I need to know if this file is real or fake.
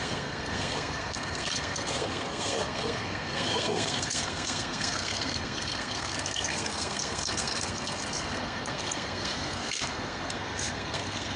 fake